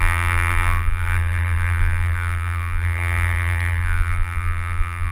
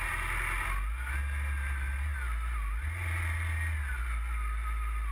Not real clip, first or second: first